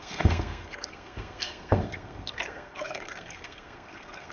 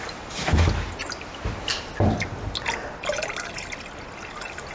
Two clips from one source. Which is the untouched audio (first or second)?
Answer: second